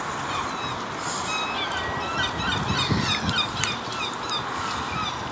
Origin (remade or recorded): recorded